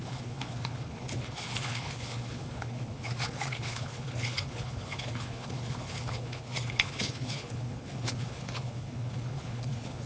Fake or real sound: fake